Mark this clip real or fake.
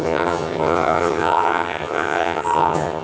fake